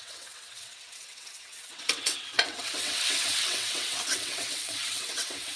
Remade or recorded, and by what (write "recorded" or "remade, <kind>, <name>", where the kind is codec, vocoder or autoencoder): remade, vocoder, WaveNeXt